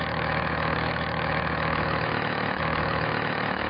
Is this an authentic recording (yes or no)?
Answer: no